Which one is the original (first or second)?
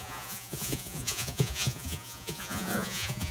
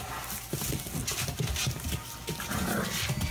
second